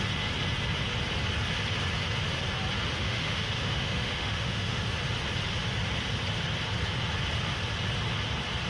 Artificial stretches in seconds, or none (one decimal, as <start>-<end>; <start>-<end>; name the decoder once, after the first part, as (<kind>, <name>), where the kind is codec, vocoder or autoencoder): 3.0-4.8 (autoencoder, DAC-VAE)